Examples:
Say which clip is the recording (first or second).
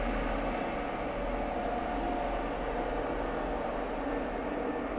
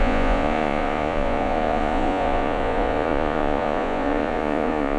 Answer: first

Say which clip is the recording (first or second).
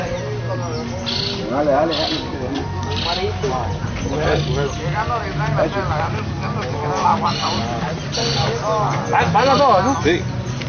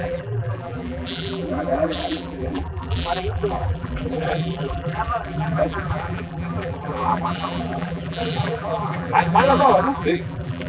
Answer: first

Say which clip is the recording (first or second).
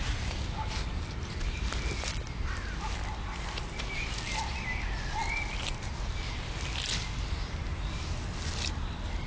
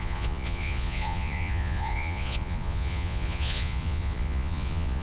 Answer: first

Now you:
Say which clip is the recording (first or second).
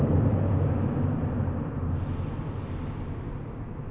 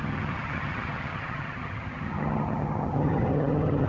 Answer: first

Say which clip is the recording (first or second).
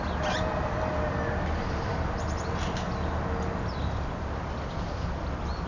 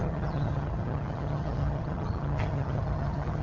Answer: first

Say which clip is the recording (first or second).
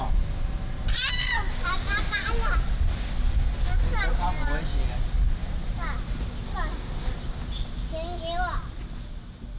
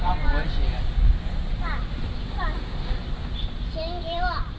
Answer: first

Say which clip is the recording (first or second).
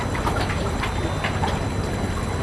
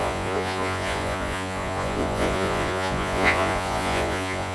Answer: first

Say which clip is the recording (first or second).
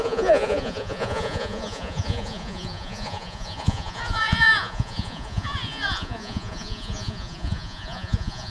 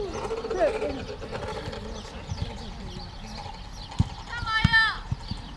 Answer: second